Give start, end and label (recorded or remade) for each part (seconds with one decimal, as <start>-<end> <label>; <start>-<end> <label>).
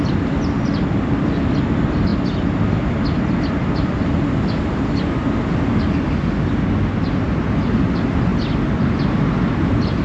0.0-2.1 remade; 2.1-7.2 recorded; 7.2-8.3 remade; 8.3-9.4 recorded; 9.4-10.0 remade